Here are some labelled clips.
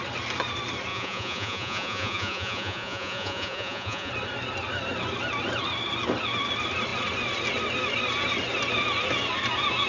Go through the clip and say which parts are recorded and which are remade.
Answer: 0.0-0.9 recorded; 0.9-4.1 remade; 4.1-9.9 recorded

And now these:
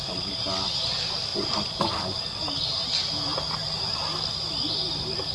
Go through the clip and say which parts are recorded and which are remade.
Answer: 0.0-5.3 recorded

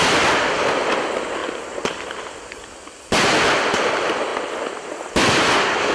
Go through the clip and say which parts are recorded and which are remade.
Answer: 0.0-5.9 recorded

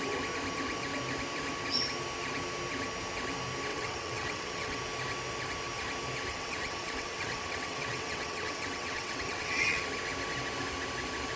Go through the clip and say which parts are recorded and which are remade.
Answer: 0.0-3.7 recorded; 3.7-4.8 remade; 4.8-6.3 recorded; 6.3-9.8 remade; 9.8-11.4 recorded

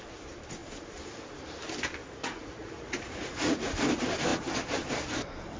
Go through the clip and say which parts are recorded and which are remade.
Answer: 0.0-2.0 recorded; 2.0-3.7 remade; 3.7-5.6 recorded

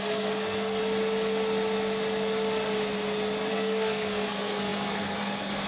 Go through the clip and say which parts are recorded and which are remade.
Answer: 0.0-0.8 remade; 0.8-3.5 recorded; 3.5-5.7 remade